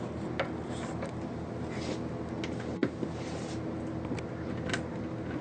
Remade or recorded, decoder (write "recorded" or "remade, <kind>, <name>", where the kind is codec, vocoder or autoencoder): recorded